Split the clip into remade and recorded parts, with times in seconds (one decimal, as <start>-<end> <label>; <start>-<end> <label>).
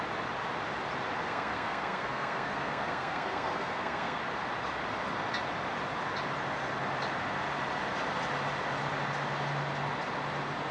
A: 0.0-1.2 recorded; 1.2-4.2 remade; 4.2-10.7 recorded